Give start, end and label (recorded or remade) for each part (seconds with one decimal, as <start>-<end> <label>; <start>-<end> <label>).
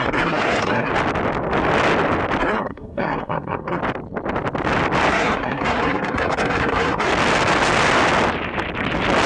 0.0-0.9 remade; 0.9-2.4 recorded; 2.4-3.8 remade; 3.8-5.1 recorded; 5.1-7.1 remade; 7.1-9.3 recorded